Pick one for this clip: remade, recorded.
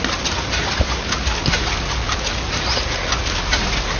recorded